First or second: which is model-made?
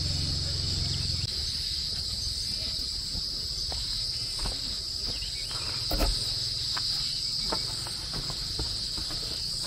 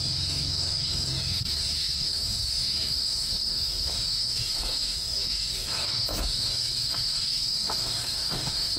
second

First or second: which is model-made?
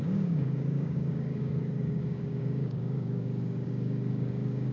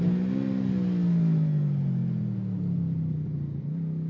first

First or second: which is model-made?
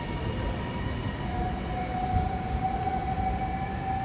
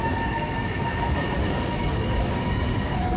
second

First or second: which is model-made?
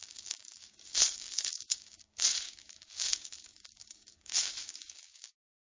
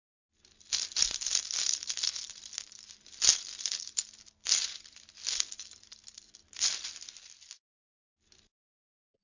first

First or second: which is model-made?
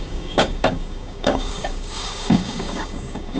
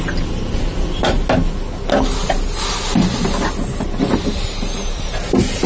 first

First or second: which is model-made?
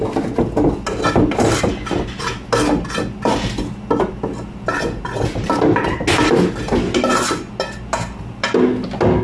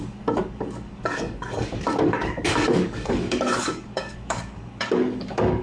second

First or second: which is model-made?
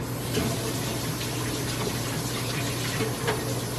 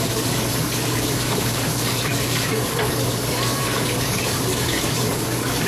second